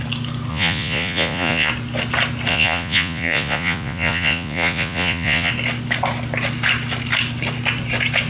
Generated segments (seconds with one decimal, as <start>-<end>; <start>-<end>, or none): 0.5-1.7; 2.5-5.5